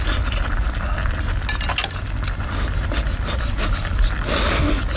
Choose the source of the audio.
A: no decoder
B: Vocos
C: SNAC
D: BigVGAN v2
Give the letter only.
A